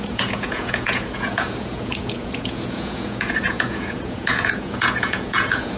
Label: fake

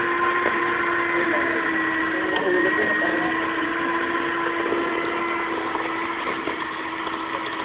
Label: real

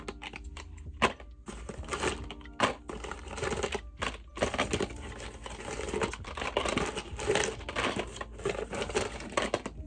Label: real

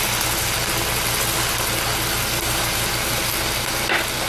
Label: real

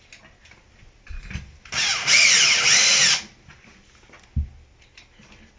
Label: real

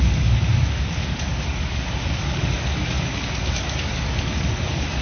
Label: fake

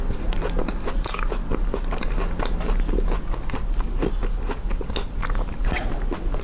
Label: real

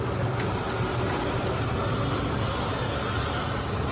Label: real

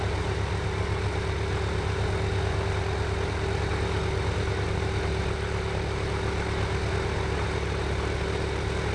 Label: real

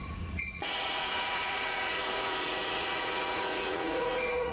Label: fake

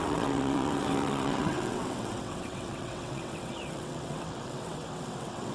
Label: fake